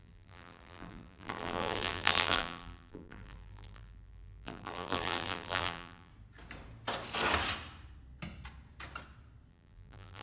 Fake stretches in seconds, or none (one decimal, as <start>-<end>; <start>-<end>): 0.0-6.1; 9.5-10.2